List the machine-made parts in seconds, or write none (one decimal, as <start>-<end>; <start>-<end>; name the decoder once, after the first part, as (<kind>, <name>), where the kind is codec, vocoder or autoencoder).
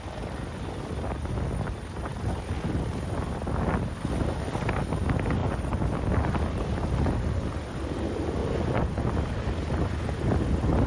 8.4-9.1 (vocoder, Vocos)